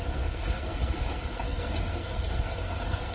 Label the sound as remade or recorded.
remade